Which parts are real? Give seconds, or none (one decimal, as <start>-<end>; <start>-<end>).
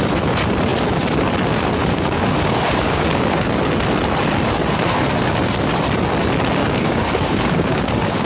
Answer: 0.0-1.8; 3.5-6.6